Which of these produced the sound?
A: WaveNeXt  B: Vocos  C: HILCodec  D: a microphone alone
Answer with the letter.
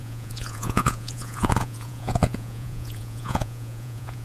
B